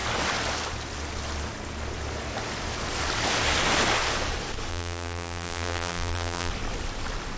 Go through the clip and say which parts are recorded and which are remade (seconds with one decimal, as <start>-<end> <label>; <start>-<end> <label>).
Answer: 0.0-4.7 recorded; 4.7-6.5 remade; 6.5-7.4 recorded